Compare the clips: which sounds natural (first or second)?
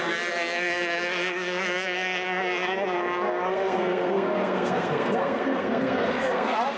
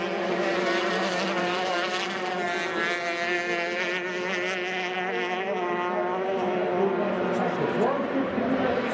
second